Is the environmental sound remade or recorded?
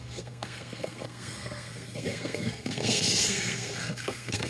remade